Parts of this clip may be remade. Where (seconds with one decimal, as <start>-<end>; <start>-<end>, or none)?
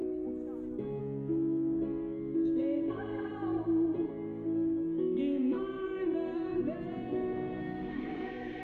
1.0-3.3; 4.1-6.5; 7.6-8.6